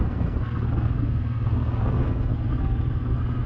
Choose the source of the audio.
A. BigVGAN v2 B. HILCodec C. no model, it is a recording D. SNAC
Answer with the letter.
D